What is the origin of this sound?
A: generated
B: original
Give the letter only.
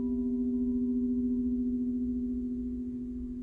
B